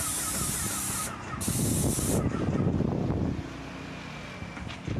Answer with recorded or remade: recorded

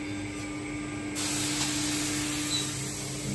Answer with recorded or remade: recorded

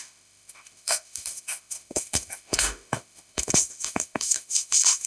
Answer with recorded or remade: remade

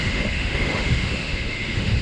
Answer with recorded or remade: remade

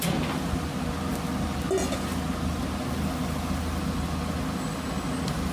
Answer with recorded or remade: recorded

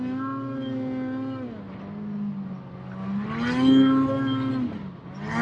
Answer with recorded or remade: recorded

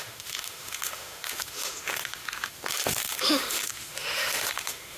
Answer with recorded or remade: remade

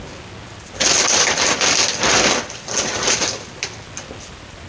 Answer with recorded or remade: recorded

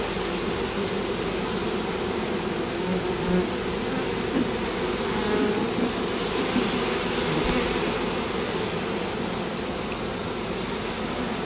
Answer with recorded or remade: recorded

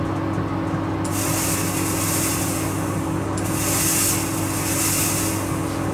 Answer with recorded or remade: recorded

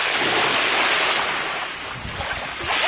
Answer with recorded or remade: recorded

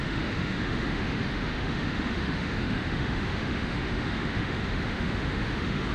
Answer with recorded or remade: remade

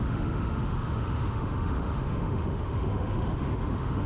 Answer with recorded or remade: remade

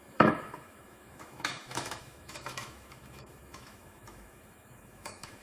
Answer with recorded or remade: remade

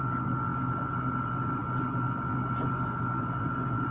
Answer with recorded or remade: recorded